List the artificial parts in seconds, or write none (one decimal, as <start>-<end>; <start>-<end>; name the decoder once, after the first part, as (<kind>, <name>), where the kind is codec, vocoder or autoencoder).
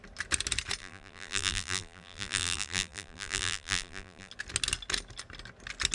0.8-4.3 (vocoder, BigVGAN v2)